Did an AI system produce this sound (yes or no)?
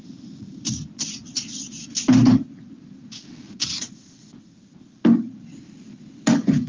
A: no